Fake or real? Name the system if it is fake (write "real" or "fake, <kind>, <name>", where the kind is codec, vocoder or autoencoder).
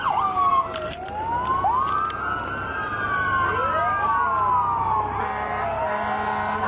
real